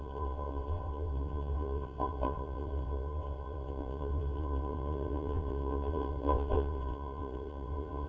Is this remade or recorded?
remade